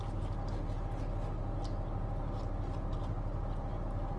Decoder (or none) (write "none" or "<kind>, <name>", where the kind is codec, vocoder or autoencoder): none